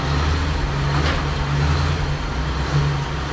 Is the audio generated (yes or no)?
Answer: no